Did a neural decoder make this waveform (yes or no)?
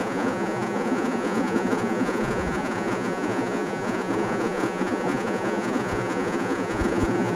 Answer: yes